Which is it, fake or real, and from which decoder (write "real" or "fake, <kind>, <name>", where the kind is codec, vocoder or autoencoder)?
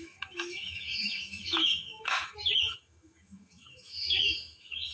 fake, autoencoder, DAC-VAE